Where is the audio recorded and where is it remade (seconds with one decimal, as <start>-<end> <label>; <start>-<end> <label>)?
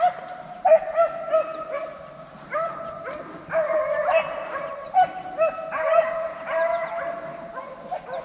0.0-8.2 recorded